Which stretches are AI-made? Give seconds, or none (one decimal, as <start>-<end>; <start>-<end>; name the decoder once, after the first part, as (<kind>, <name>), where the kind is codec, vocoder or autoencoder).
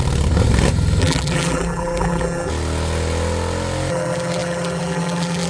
1.0-2.5 (vocoder, BigVGAN v2); 3.9-5.5